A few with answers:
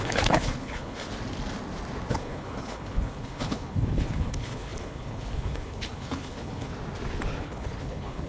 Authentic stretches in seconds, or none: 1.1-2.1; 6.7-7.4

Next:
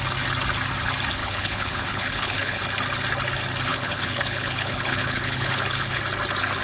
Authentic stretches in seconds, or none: 0.0-1.2; 2.6-3.7; 6.0-6.6

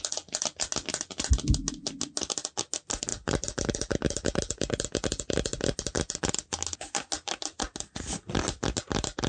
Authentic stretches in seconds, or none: 0.0-9.3